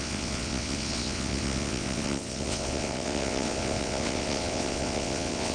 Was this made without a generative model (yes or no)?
no